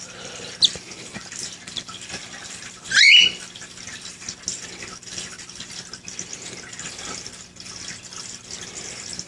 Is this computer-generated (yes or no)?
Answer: no